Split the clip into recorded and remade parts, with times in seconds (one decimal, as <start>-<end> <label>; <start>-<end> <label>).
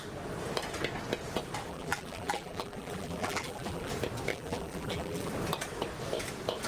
0.0-1.7 recorded; 1.7-3.9 remade; 3.9-4.3 recorded; 4.3-5.3 remade; 5.3-6.7 recorded